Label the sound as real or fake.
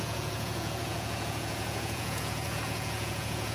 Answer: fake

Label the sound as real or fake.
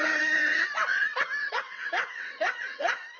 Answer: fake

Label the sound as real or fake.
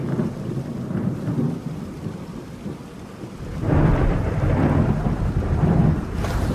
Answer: fake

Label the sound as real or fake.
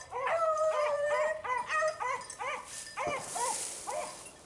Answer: real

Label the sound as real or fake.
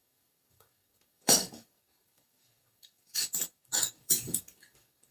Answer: fake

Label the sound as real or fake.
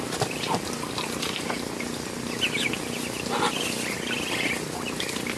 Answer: real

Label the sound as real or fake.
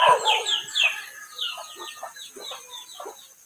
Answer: fake